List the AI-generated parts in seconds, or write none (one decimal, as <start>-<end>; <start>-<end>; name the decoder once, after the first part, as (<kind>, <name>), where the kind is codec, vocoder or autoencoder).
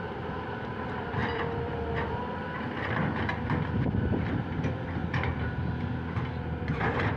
0.0-5.0 (vocoder, BigVGAN v2); 6.3-7.2